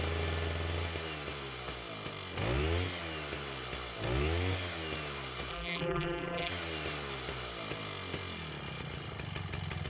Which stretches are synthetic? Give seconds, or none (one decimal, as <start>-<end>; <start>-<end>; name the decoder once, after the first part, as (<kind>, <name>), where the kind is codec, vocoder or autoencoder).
5.5-6.5 (vocoder, BigVGAN v2)